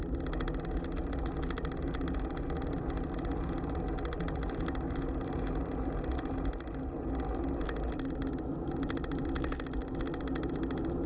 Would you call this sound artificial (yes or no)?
no